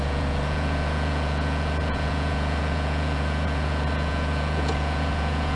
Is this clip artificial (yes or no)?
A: yes